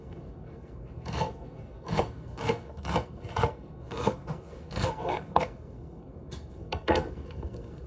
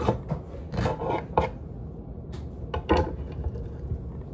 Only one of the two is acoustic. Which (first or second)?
second